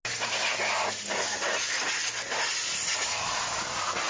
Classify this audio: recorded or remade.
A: recorded